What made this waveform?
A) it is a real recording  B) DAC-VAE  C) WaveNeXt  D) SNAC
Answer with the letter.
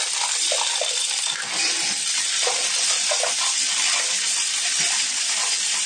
A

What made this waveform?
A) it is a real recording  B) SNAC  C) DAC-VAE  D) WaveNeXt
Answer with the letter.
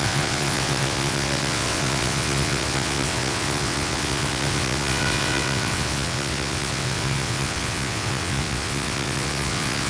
D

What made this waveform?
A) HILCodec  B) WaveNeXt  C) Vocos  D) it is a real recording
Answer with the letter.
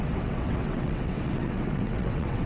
B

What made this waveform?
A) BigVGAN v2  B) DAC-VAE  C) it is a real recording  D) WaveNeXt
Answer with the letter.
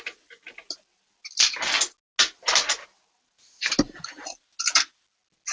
C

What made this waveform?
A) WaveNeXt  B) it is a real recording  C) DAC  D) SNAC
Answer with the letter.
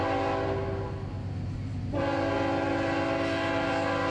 B